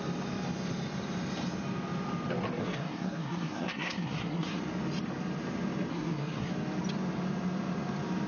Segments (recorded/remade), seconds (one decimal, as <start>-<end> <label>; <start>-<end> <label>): 0.0-2.6 recorded; 2.6-4.6 remade; 4.6-5.9 recorded; 5.9-6.5 remade; 6.5-8.3 recorded